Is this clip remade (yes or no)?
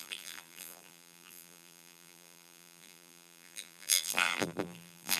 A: yes